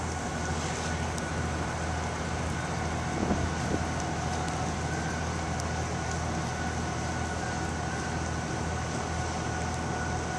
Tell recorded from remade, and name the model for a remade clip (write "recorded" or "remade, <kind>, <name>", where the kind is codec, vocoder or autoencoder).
recorded